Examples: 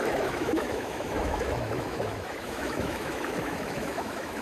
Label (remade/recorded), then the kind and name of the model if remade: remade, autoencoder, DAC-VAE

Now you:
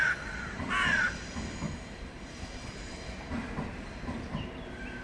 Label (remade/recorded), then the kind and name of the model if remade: recorded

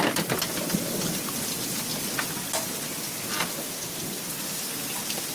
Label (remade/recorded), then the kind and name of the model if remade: recorded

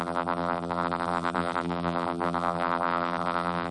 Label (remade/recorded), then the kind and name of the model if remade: remade, vocoder, BigVGAN v2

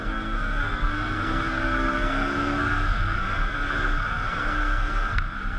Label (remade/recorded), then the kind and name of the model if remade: remade, codec, SNAC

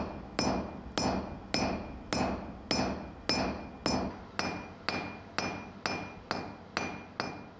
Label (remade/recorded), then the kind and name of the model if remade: recorded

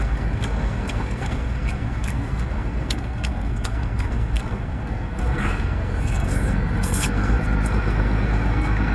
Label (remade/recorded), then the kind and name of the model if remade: remade, codec, SNAC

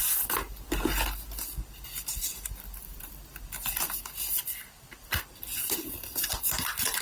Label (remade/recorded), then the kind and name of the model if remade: recorded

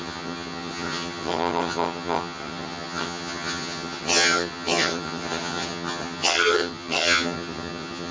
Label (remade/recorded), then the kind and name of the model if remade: remade, vocoder, HiFi-GAN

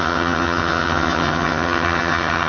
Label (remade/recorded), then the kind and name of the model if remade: remade, vocoder, HiFi-GAN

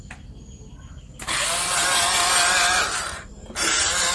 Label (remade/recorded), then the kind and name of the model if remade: recorded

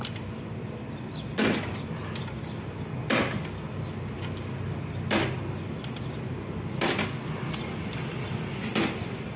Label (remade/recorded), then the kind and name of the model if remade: recorded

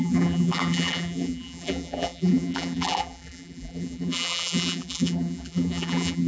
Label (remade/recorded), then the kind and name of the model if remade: remade, vocoder, BigVGAN v2